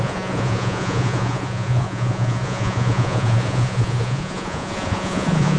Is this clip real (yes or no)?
no